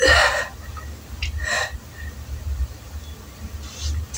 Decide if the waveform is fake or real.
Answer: real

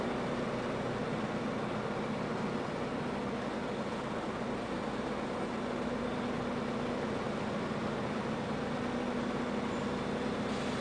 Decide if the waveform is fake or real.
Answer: real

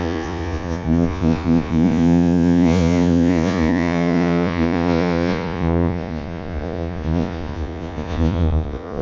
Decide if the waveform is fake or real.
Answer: fake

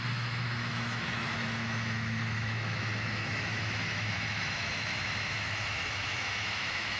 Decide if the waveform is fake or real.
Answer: fake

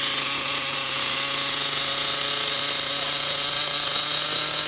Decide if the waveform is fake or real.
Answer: real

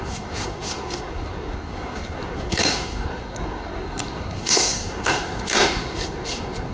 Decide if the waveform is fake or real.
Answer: fake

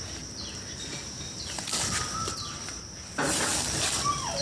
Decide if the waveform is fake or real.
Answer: real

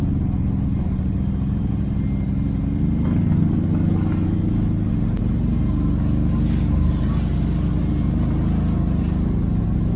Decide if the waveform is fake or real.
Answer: real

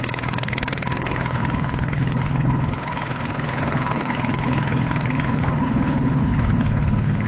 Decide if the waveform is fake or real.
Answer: fake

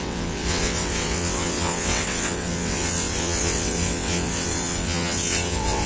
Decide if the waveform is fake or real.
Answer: fake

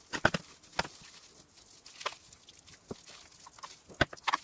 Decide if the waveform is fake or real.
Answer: real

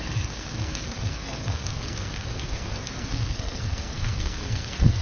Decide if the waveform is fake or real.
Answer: fake